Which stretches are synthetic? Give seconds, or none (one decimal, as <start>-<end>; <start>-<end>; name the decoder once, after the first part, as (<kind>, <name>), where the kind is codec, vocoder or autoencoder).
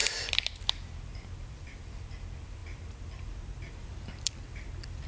0.0-5.1 (vocoder, BigVGAN v2)